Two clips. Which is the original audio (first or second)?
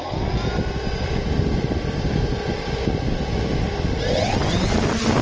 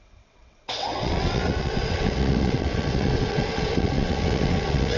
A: first